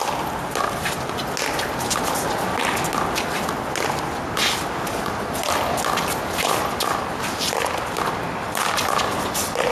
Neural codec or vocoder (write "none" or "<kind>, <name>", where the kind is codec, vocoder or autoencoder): none